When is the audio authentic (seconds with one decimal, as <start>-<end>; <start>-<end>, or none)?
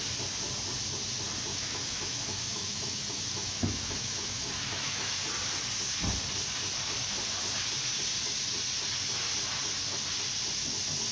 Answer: 0.0-1.5; 5.1-11.1